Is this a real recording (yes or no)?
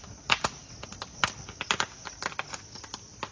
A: yes